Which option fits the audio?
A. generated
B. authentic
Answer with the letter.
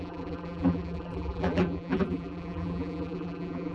A